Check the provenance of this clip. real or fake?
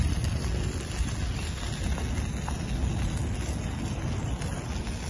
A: real